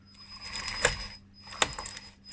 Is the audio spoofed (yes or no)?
no